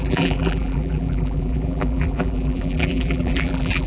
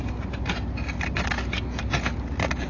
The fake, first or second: first